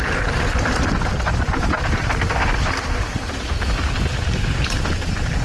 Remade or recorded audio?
remade